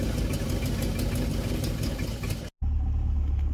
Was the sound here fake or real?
real